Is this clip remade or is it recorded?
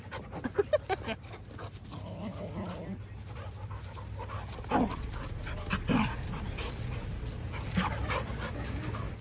recorded